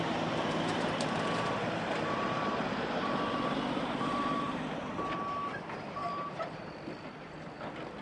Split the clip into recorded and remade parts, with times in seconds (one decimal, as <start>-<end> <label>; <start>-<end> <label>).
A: 0.0-4.8 remade; 4.8-6.0 recorded; 6.0-6.6 remade; 6.6-8.0 recorded